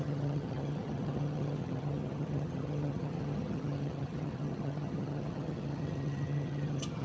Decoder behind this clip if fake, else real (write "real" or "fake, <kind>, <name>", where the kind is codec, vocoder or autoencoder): fake, vocoder, HiFi-GAN